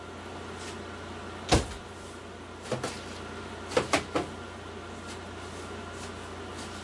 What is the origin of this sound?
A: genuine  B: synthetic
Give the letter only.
A